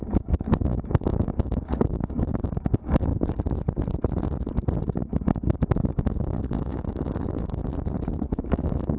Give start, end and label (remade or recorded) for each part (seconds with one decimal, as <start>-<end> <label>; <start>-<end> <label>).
0.0-3.1 remade; 3.1-4.8 recorded; 4.8-7.6 remade; 7.6-8.3 recorded; 8.3-9.0 remade